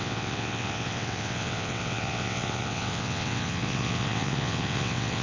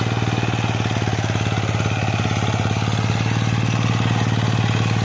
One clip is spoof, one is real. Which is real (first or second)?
second